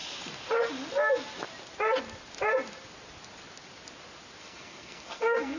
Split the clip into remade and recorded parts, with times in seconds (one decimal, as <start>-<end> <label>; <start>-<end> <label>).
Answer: 0.0-4.4 recorded; 4.4-5.6 remade